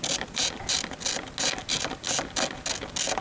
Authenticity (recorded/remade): recorded